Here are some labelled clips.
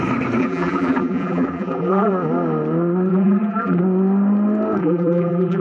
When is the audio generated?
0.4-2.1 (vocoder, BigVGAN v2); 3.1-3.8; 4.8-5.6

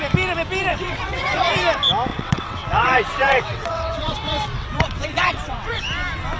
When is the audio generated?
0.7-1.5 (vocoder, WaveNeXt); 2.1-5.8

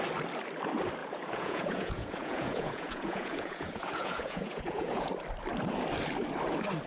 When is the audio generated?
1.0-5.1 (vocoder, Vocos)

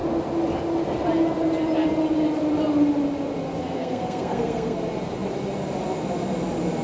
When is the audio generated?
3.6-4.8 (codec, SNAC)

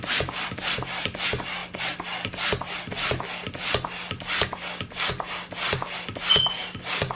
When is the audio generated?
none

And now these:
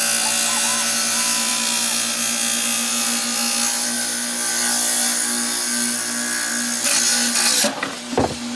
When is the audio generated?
none